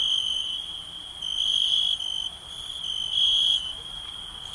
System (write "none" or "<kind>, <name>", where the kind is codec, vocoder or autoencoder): none